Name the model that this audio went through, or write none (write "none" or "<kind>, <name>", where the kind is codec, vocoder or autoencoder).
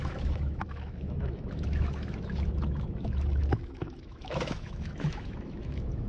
autoencoder, DAC-VAE